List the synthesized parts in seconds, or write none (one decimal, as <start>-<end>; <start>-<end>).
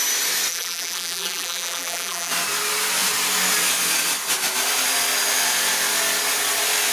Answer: 0.5-2.3